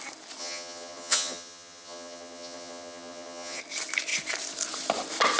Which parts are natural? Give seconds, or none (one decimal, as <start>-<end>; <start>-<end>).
0.0-0.4; 3.6-5.4